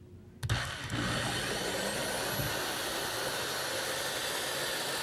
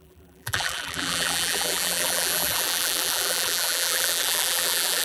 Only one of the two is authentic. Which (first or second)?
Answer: first